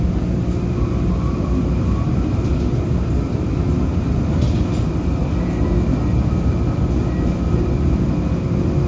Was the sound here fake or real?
real